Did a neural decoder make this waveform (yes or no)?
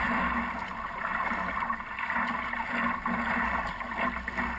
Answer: no